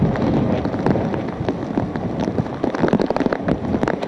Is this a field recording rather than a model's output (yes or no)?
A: yes